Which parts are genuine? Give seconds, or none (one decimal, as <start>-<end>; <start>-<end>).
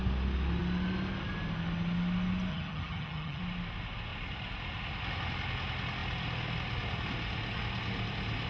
0.0-2.5; 3.4-8.5